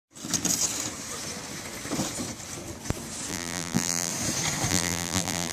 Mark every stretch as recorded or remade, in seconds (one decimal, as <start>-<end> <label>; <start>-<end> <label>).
0.0-3.3 recorded; 3.3-4.1 remade; 4.1-4.7 recorded; 4.7-5.5 remade